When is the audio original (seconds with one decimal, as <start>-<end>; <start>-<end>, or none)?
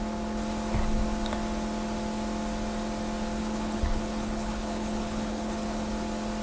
0.0-3.4; 5.9-6.4